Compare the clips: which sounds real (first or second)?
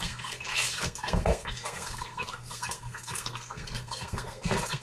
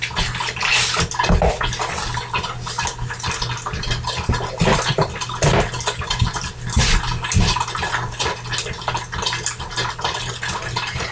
second